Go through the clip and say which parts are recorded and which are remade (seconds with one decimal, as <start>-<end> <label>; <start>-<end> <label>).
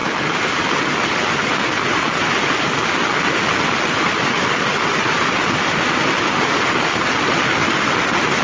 0.0-8.4 recorded